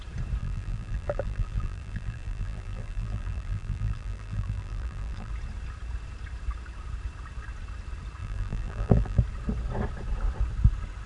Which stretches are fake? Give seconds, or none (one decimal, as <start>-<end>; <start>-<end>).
0.4-5.3; 8.2-9.2